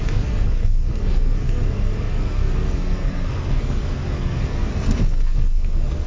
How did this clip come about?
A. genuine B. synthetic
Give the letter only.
B